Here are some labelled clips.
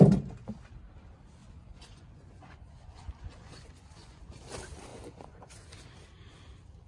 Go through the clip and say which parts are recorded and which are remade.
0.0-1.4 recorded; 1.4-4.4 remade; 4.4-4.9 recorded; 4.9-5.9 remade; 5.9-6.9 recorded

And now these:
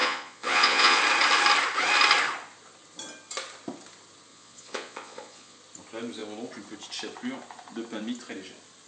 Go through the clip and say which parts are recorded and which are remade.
0.0-1.0 remade; 1.0-4.3 recorded; 4.3-5.6 remade; 5.6-8.9 recorded

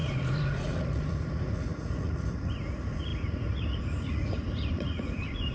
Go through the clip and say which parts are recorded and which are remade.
0.0-5.5 remade

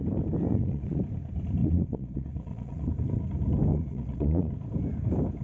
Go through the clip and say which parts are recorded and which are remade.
0.0-0.5 recorded; 0.5-1.0 remade; 1.0-1.6 recorded; 1.6-2.9 remade; 2.9-3.7 recorded; 3.7-4.5 remade; 4.5-5.4 recorded

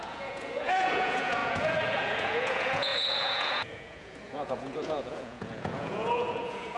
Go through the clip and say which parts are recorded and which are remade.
0.0-6.8 remade